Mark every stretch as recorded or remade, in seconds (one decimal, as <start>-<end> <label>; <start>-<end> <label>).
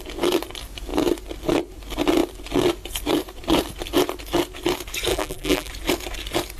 0.0-5.1 recorded; 5.1-5.7 remade; 5.7-6.6 recorded